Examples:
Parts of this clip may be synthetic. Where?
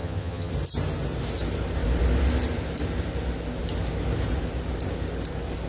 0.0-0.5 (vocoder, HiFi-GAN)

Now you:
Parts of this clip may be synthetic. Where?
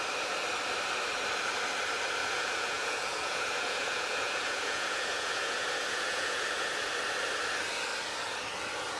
2.2-6.9 (vocoder, Vocos)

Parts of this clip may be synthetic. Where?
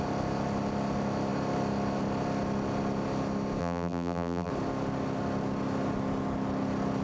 3.6-4.5 (vocoder, BigVGAN v2)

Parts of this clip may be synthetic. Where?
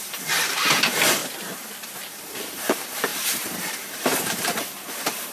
0.0-1.2 (vocoder, BigVGAN v2); 2.1-5.3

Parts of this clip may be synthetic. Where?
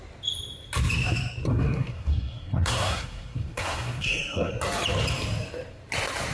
1.5-4.5 (codec, SNAC)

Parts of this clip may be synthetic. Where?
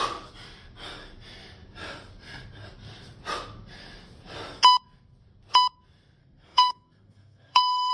6.2-7.9 (codec, SNAC)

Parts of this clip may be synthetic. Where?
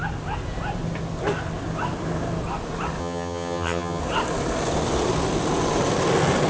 3.0-4.0 (vocoder, HiFi-GAN)